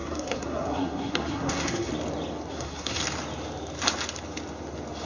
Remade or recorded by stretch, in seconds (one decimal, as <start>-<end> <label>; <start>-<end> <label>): 0.0-1.9 remade; 1.9-2.5 recorded; 2.5-3.0 remade; 3.0-5.1 recorded